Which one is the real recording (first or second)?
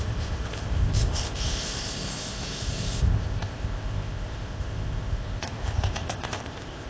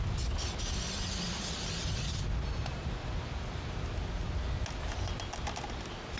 second